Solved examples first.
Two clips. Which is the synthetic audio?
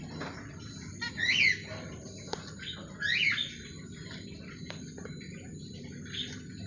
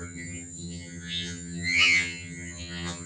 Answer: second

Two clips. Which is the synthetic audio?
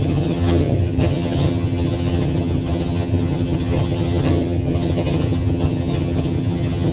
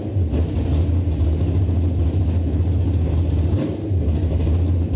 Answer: first